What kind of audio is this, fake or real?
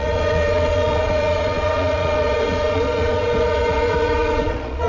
fake